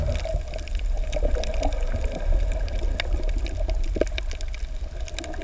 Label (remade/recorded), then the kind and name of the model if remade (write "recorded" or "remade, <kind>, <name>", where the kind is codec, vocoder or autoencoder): recorded